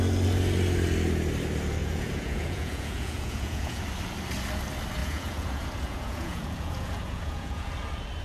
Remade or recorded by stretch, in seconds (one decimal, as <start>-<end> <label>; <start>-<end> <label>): 0.0-1.8 recorded; 1.8-3.8 remade; 3.8-5.0 recorded; 5.0-7.7 remade; 7.7-8.2 recorded